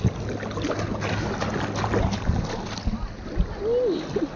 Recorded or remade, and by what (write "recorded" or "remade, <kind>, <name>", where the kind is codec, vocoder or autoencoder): recorded